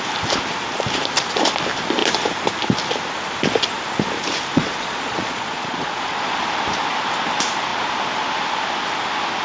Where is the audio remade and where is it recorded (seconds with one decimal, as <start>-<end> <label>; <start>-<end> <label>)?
0.0-4.5 recorded; 4.5-6.4 remade; 6.4-9.4 recorded